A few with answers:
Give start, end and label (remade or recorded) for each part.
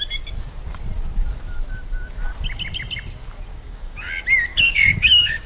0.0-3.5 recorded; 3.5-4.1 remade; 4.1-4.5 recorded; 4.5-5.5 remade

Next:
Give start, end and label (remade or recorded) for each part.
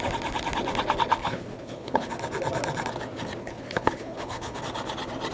0.0-1.2 recorded; 1.2-2.1 remade; 2.1-3.4 recorded; 3.4-4.6 remade; 4.6-5.3 recorded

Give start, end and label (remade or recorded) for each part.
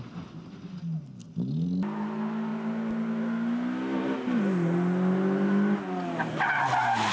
0.0-7.1 recorded